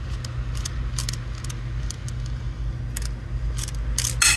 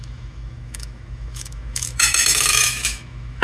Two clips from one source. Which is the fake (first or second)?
second